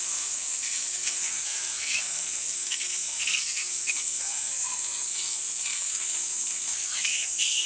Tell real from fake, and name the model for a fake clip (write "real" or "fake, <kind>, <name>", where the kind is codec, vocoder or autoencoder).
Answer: fake, codec, SNAC